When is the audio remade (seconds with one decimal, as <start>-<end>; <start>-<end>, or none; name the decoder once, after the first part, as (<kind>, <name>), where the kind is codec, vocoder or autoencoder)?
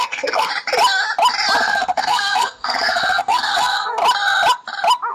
0.0-0.5 (codec, SNAC); 1.6-4.0